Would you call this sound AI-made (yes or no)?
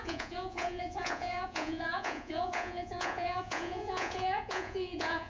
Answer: yes